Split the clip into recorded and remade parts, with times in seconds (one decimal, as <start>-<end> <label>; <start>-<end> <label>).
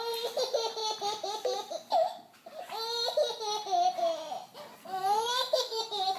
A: 0.0-4.8 recorded; 4.8-5.8 remade; 5.8-6.2 recorded